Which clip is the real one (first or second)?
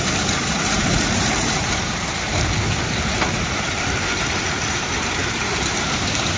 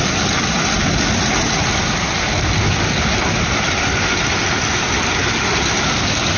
second